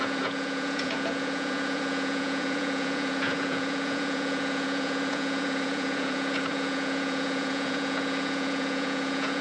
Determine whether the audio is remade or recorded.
remade